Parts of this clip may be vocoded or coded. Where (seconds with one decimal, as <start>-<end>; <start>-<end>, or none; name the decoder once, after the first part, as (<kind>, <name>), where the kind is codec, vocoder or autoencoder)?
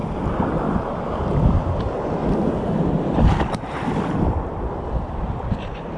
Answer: 0.7-2.2 (vocoder, BigVGAN v2); 3.7-6.0